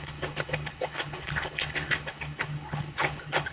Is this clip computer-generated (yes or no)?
yes